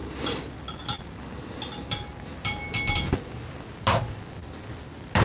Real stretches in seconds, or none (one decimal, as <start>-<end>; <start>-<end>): 0.0-5.2